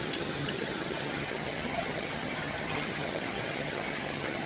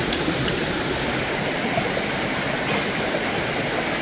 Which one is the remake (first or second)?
first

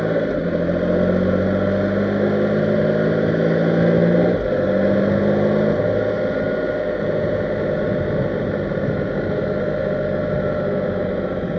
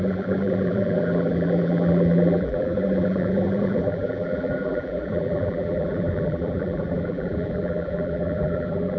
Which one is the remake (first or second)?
second